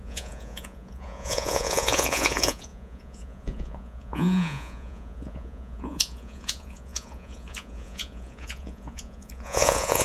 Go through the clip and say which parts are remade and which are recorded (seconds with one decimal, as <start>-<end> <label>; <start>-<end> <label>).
0.0-10.0 remade